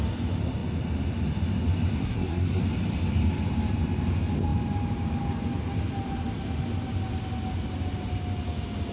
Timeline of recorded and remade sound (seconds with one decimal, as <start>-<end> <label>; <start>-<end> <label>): 0.0-2.0 recorded; 2.0-2.6 remade; 2.6-8.9 recorded